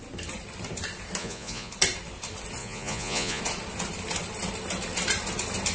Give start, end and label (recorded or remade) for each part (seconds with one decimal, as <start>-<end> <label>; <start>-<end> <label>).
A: 0.0-1.2 recorded; 1.2-1.7 remade; 1.7-2.6 recorded; 2.6-3.4 remade; 3.4-5.7 recorded